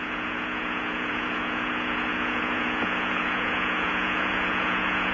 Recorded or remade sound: remade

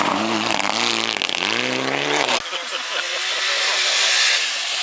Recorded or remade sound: recorded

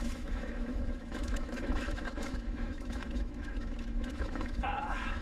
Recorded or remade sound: remade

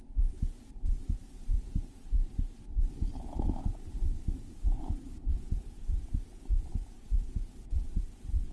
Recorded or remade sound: recorded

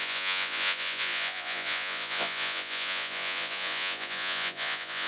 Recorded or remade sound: remade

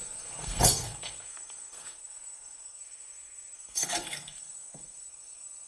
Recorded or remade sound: remade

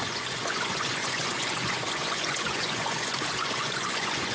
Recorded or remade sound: remade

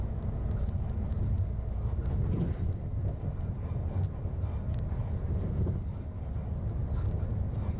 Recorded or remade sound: recorded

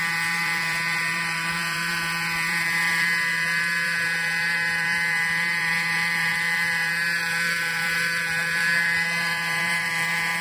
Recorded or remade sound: remade